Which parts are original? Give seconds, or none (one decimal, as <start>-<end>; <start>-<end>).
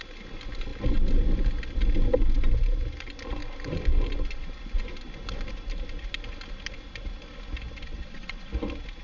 0.0-7.9; 8.5-9.0